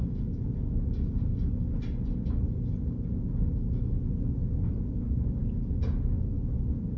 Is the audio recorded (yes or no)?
yes